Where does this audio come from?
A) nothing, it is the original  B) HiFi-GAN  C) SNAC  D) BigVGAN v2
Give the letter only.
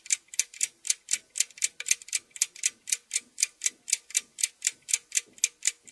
A